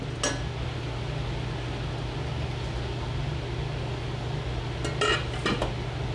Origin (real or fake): real